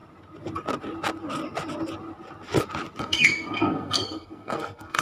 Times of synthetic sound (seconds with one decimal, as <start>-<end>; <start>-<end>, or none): 3.0-5.0